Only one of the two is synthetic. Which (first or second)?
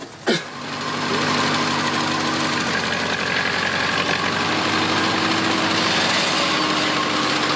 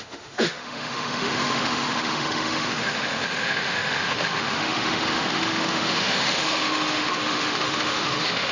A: second